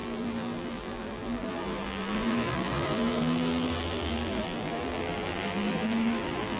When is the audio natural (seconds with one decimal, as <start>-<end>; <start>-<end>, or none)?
none